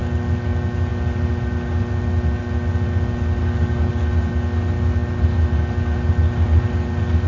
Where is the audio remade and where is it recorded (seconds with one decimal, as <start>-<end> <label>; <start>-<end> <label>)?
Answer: 0.0-3.4 recorded; 3.4-3.9 remade; 3.9-7.3 recorded